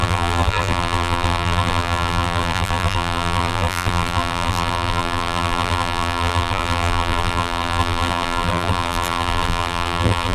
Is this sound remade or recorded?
remade